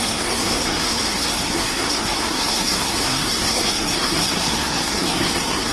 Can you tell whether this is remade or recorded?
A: remade